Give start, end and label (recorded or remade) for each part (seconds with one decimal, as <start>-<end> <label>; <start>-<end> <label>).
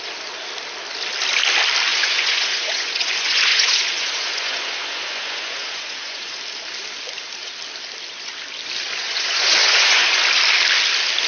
0.0-1.9 recorded; 1.9-6.4 remade; 6.4-9.0 recorded; 9.0-10.2 remade; 10.2-11.3 recorded